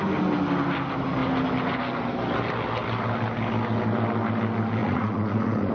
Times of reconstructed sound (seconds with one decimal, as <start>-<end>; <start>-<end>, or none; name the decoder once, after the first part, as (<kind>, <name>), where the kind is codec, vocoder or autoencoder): 4.8-5.7 (vocoder, Vocos)